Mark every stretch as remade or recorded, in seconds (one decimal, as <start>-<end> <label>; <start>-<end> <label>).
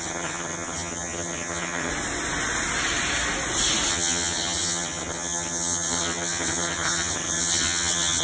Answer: 0.0-1.9 remade; 1.9-3.9 recorded; 3.9-8.2 remade